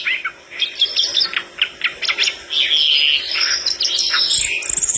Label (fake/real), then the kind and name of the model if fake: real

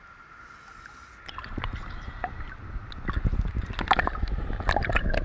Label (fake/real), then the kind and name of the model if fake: real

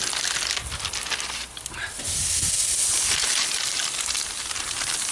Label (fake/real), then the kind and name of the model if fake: real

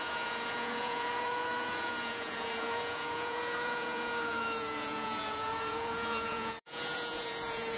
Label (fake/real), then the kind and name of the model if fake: fake, vocoder, Vocos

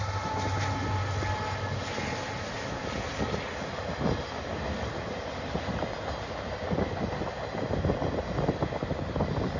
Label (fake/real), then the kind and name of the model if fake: real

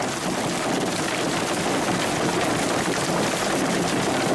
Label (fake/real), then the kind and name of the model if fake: real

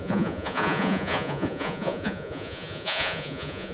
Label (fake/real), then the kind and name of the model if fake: fake, vocoder, Vocos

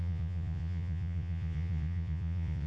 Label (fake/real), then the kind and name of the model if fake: fake, vocoder, Vocos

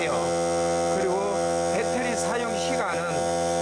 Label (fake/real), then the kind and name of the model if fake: real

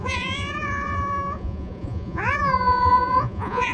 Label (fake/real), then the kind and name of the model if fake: fake, vocoder, Vocos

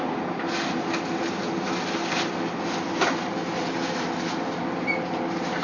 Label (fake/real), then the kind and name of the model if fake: real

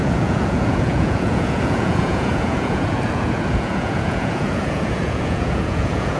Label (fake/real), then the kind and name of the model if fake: fake, vocoder, Vocos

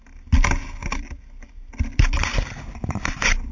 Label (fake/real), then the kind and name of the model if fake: real